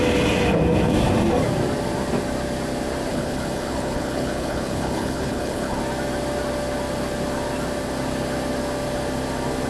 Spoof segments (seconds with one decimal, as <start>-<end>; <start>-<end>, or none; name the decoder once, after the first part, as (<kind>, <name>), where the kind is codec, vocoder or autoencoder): 3.1-5.8 (codec, HILCodec)